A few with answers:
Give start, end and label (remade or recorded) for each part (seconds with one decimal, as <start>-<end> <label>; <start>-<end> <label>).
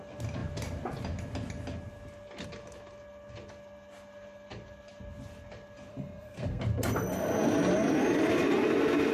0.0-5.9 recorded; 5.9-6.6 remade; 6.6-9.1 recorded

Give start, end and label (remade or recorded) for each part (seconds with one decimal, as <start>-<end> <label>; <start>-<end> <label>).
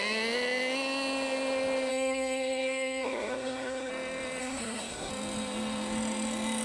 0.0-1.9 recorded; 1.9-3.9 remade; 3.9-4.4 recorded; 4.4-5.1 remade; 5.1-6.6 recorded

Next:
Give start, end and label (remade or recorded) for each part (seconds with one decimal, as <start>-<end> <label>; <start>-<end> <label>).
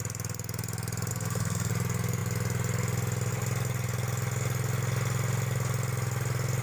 0.0-1.1 recorded; 1.1-1.7 remade; 1.7-6.6 recorded